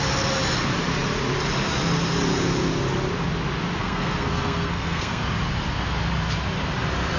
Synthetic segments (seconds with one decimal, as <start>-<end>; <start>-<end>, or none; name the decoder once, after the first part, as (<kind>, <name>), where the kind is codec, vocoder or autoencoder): 3.8-5.2 (codec, SNAC)